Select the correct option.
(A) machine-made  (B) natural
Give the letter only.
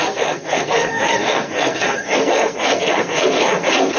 A